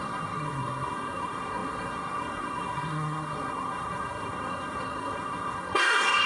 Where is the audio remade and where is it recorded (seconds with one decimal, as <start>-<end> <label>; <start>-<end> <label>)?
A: 0.0-6.3 remade